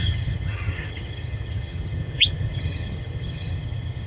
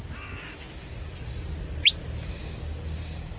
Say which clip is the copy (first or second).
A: first